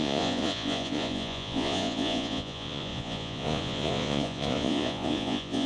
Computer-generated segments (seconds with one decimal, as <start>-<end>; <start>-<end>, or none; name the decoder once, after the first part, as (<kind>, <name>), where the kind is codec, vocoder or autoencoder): 0.0-5.7 (vocoder, Vocos)